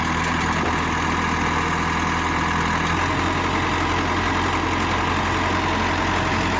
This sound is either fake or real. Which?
real